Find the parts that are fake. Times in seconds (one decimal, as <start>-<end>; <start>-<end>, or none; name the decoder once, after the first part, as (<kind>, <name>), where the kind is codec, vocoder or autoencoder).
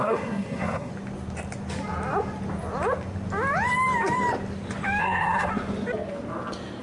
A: 0.0-0.9 (codec, SNAC); 5.0-5.5